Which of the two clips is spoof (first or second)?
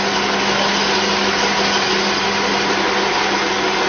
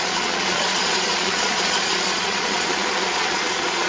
second